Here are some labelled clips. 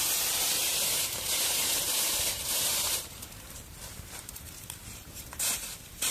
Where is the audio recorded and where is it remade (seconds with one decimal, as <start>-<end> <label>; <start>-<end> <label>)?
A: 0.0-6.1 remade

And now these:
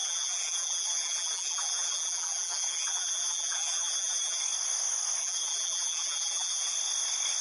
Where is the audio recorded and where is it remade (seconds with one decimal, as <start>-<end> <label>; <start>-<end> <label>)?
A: 0.0-4.4 remade; 4.4-5.2 recorded; 5.2-6.7 remade; 6.7-7.4 recorded

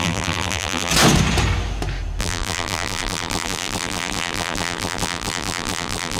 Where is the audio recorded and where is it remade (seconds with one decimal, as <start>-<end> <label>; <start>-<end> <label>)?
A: 0.0-0.9 remade; 0.9-2.2 recorded; 2.2-6.2 remade